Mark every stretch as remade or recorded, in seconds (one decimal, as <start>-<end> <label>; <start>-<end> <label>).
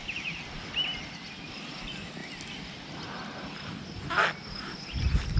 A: 0.0-5.4 recorded